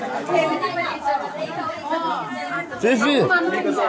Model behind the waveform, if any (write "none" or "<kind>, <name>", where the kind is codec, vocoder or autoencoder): none